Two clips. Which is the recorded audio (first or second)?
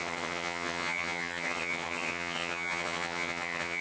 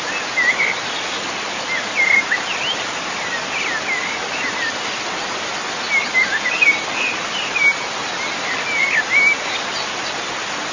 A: second